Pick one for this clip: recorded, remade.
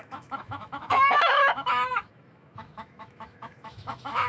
remade